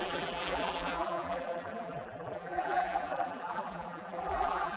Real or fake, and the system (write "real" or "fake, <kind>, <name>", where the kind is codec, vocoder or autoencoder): fake, vocoder, BigVGAN v2